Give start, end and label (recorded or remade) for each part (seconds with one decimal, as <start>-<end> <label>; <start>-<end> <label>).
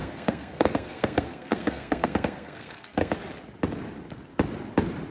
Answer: 0.0-3.1 remade; 3.1-5.1 recorded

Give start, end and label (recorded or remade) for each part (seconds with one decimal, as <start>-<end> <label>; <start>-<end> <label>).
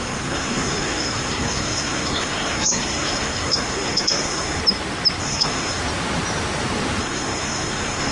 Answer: 0.0-4.6 remade; 4.6-5.2 recorded; 5.2-5.8 remade; 5.8-7.0 recorded; 7.0-8.1 remade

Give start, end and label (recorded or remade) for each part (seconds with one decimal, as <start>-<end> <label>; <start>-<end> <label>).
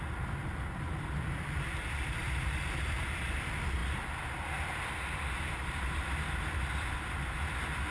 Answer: 0.0-7.9 recorded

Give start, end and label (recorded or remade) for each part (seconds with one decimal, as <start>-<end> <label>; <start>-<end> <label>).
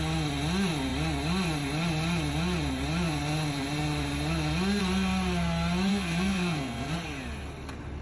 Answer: 0.0-5.9 recorded; 5.9-6.9 remade; 6.9-8.0 recorded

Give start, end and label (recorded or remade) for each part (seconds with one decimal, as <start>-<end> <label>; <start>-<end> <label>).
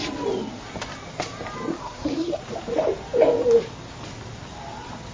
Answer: 0.0-1.7 recorded; 1.7-2.4 remade; 2.4-5.1 recorded